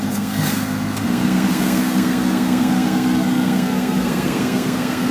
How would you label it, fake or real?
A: fake